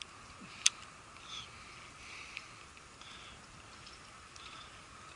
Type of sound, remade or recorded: recorded